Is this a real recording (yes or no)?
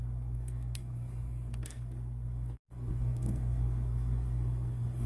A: no